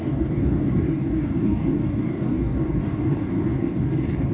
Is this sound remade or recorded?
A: remade